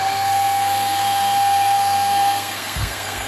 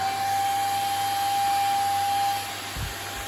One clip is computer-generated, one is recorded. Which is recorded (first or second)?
second